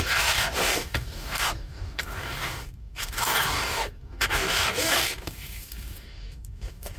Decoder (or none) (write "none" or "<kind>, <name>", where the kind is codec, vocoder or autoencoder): codec, DAC